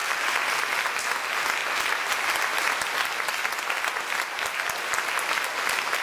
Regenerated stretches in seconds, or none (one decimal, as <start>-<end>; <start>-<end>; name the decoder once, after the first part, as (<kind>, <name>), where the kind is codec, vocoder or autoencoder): none